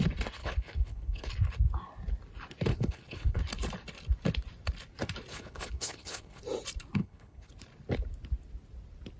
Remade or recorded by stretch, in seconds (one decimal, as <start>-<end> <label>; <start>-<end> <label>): 0.0-0.4 recorded; 0.4-1.3 remade; 1.3-2.7 recorded; 2.7-3.4 remade; 3.4-5.3 recorded; 5.3-6.4 remade; 6.4-7.0 recorded; 7.0-7.5 remade; 7.5-9.2 recorded